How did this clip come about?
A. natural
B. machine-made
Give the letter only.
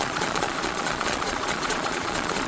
B